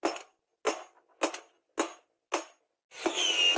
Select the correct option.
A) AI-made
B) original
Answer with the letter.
B